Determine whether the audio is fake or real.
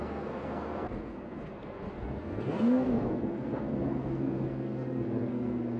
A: fake